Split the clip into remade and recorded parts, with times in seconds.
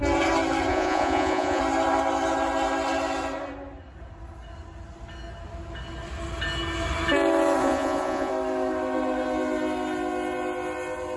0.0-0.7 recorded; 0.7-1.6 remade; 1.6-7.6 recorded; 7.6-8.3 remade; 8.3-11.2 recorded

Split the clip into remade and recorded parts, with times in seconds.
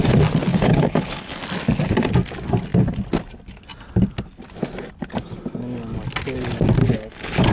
0.0-0.5 recorded; 0.5-1.4 remade; 1.4-6.8 recorded; 6.8-7.5 remade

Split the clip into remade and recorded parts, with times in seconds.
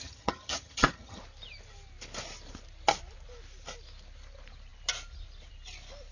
0.0-1.2 remade; 1.2-6.1 recorded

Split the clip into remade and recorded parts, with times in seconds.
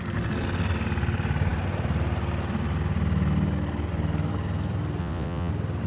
0.0-5.0 recorded; 5.0-5.5 remade; 5.5-5.9 recorded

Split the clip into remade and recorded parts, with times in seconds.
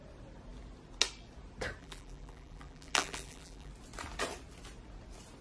0.0-1.8 recorded; 1.8-3.7 remade; 3.7-5.4 recorded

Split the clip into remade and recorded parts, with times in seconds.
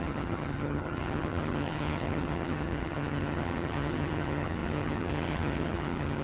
0.0-6.2 remade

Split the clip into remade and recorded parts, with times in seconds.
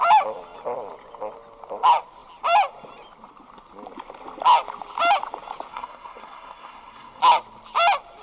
0.0-5.7 recorded; 5.7-7.2 remade; 7.2-8.2 recorded